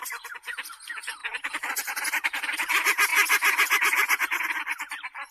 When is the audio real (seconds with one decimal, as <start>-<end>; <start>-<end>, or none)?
0.0-3.1; 4.4-5.3